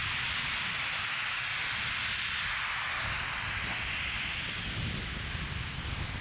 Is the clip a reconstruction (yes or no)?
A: no